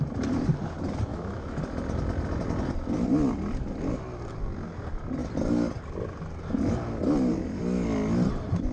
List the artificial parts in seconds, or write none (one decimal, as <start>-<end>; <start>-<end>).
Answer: 1.1-1.6